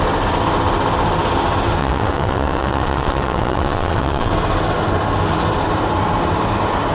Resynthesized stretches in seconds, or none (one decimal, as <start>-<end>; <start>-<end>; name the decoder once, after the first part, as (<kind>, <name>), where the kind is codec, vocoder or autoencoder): 1.8-4.3 (vocoder, WaveNeXt)